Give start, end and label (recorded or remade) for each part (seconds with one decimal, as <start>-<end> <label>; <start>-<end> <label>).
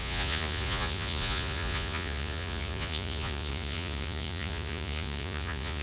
0.0-5.8 remade